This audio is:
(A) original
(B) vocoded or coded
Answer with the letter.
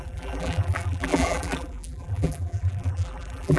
B